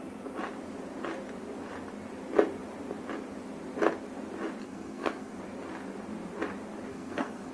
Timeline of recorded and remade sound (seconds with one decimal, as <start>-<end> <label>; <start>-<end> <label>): 0.0-4.6 recorded; 4.6-5.4 remade; 5.4-6.9 recorded; 6.9-7.5 remade

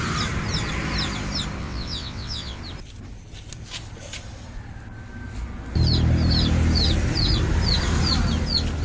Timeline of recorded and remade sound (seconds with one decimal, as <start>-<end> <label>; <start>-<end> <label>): 0.0-1.6 recorded; 1.6-2.6 remade; 2.6-8.8 recorded

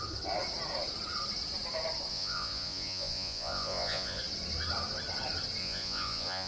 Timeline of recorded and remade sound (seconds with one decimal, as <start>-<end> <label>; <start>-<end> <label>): 0.0-2.1 recorded; 2.1-4.2 remade; 4.2-5.6 recorded; 5.6-6.5 remade

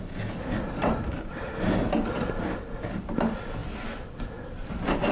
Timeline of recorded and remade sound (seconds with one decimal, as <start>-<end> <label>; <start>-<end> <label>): 0.0-5.1 recorded

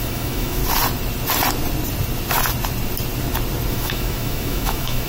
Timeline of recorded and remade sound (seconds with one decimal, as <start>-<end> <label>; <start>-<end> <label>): 0.0-0.6 remade; 0.6-3.7 recorded; 3.7-5.1 remade

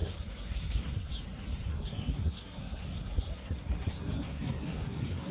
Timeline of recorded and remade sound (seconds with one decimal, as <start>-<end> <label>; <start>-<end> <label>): 0.0-1.1 remade; 1.1-1.7 recorded; 1.7-5.3 remade